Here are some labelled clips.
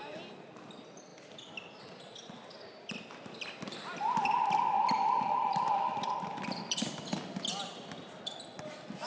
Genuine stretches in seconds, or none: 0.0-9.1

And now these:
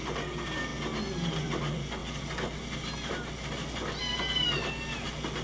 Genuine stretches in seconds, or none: 0.0-5.4

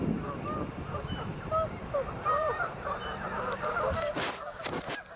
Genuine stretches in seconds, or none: 0.0-1.3; 4.1-5.2

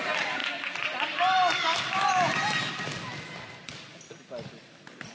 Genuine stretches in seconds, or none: 0.0-5.1

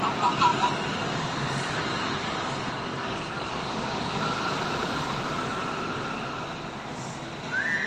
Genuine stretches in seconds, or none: 0.0-0.5; 4.4-7.9